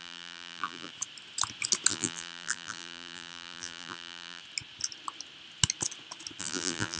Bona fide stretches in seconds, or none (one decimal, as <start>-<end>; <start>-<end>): 0.9-1.9; 4.4-6.4

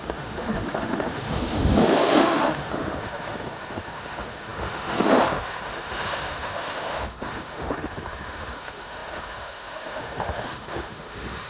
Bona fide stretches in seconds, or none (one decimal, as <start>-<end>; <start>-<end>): none

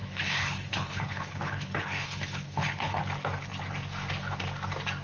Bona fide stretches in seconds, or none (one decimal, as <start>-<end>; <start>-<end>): 3.0-5.0

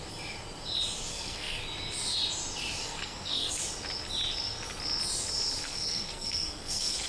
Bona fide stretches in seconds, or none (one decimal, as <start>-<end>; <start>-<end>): 0.0-1.1; 1.6-2.8; 3.6-5.6

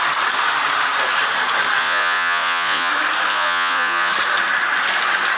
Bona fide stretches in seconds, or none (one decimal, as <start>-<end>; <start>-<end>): 0.0-1.8; 2.9-3.3; 4.1-5.4

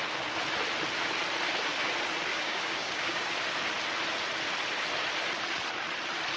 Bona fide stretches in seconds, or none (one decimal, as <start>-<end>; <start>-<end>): 0.0-2.3; 3.3-6.4

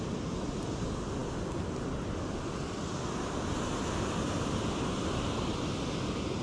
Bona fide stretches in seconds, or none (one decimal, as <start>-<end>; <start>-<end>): 0.0-6.4

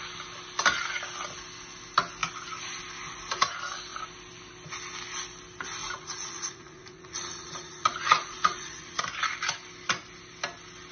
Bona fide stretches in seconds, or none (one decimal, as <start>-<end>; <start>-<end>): 0.0-5.8; 9.0-10.9